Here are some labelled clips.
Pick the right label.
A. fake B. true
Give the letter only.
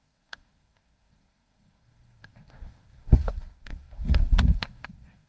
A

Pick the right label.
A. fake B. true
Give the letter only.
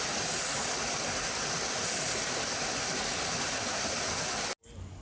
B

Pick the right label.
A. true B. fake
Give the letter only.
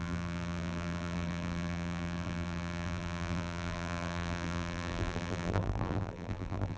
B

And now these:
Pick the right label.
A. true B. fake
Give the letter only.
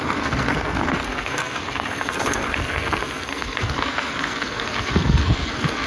B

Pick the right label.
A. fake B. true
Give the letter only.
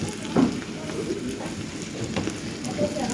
B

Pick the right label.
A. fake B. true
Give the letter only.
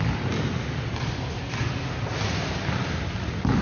B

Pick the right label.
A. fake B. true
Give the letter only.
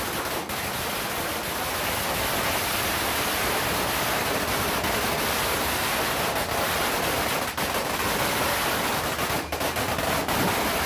B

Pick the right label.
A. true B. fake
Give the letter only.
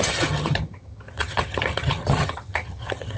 B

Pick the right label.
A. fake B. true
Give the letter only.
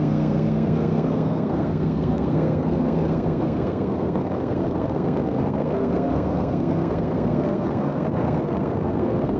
A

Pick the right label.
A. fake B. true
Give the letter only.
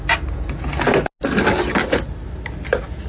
B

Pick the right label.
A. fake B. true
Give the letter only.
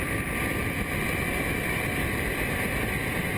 A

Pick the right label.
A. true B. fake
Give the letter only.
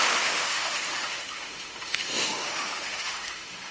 B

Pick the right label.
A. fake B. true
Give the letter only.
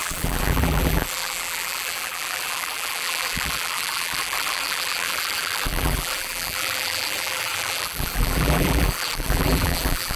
A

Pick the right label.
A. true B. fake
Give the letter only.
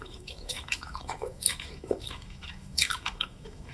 B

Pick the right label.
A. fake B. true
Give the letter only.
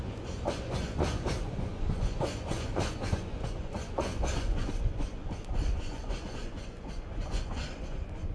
A